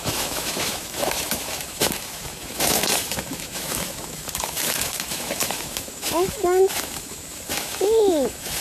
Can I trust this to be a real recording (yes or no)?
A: no